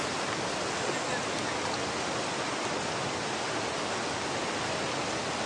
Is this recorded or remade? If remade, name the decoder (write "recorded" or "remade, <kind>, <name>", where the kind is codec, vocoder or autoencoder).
recorded